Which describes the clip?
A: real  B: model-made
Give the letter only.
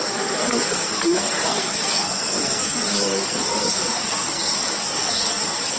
B